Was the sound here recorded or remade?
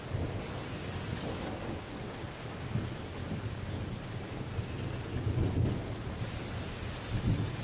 recorded